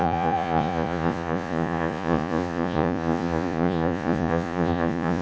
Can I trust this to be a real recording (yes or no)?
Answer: no